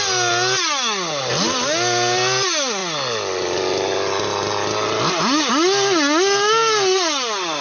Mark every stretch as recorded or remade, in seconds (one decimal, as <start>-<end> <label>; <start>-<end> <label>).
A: 0.0-7.6 recorded